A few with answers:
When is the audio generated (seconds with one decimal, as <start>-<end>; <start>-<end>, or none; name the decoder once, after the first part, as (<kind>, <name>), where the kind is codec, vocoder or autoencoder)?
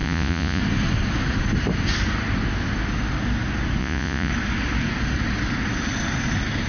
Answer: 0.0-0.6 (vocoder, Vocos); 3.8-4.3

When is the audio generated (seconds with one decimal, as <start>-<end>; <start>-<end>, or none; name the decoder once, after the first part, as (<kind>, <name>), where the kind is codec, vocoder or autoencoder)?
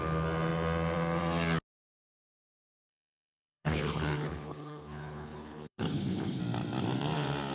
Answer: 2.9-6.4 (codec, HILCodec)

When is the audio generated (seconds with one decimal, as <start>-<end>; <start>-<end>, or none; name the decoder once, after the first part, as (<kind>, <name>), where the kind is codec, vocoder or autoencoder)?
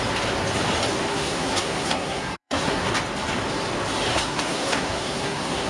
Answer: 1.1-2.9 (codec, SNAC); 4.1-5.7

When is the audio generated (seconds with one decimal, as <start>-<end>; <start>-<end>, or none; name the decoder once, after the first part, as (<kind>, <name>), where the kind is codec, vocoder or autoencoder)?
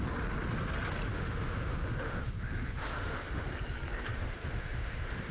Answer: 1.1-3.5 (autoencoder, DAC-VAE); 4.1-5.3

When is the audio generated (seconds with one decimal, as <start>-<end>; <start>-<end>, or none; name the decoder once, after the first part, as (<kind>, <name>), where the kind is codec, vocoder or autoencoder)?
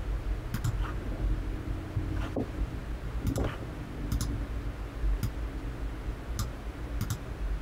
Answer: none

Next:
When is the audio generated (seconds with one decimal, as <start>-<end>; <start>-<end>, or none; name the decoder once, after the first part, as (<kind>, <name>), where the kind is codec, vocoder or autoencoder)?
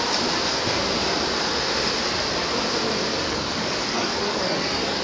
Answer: 3.1-5.0 (codec, DAC)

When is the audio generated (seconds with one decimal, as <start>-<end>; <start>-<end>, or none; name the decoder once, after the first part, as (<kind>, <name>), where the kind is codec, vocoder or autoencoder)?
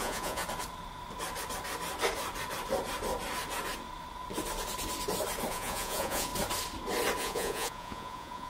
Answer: 0.0-0.4 (vocoder, Vocos); 5.5-6.3; 7.2-8.5